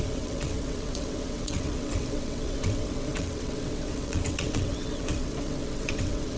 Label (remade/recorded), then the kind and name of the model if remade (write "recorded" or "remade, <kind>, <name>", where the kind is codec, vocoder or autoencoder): remade, vocoder, WaveNeXt